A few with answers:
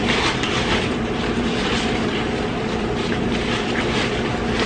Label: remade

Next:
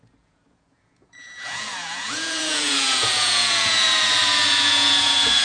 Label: remade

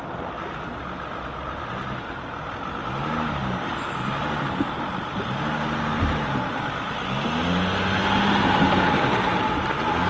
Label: recorded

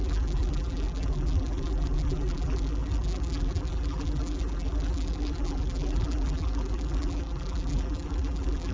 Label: remade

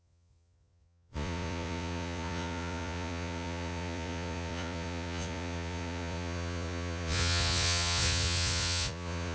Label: remade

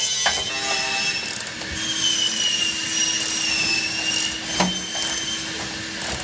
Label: recorded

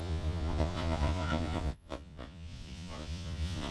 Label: remade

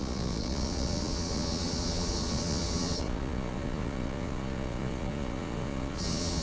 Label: remade